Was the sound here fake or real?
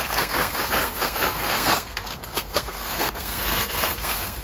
fake